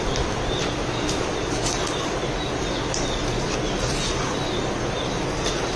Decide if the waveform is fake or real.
real